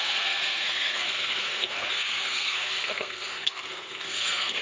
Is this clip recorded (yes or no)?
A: no